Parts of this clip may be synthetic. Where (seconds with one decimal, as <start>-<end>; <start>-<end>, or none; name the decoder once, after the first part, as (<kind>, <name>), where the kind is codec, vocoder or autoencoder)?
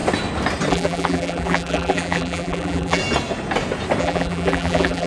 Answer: 0.7-3.0 (vocoder, BigVGAN v2); 4.0-5.1